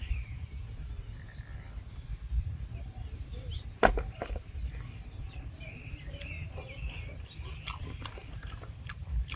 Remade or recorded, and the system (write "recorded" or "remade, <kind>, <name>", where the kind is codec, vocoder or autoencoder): recorded